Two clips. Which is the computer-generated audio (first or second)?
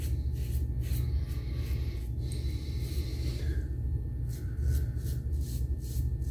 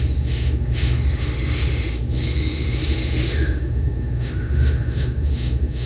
second